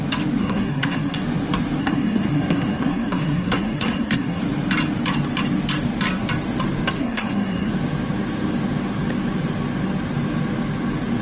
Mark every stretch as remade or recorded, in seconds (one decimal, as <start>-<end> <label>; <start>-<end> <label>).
0.0-0.4 recorded; 0.4-1.2 remade; 1.2-1.8 recorded; 1.8-4.4 remade; 4.4-7.0 recorded; 7.0-7.7 remade; 7.7-11.2 recorded